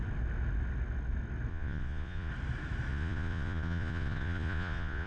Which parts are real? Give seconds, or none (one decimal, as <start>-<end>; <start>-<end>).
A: 0.0-1.5; 2.3-2.9